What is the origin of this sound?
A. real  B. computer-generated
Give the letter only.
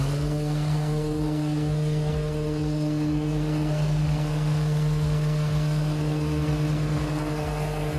B